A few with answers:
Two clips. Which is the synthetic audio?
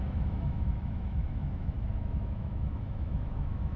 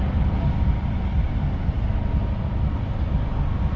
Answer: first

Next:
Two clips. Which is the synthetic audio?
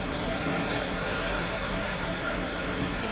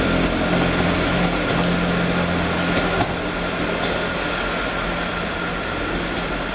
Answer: first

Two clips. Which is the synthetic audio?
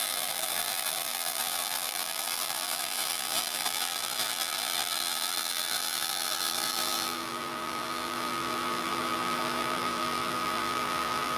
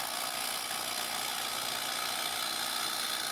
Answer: first